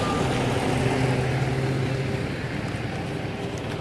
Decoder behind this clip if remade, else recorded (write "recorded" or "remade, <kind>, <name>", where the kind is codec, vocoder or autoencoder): recorded